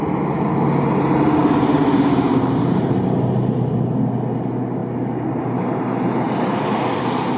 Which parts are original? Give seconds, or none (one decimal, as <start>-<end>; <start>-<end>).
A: 0.0-7.4